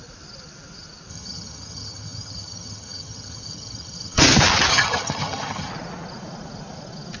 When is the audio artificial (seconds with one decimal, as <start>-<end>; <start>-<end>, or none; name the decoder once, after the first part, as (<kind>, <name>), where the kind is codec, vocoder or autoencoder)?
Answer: 1.1-4.2 (vocoder, HiFi-GAN); 4.7-5.7